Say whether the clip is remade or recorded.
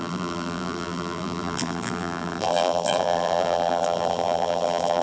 remade